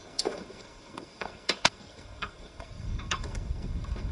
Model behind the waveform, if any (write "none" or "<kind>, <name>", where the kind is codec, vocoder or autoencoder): codec, SNAC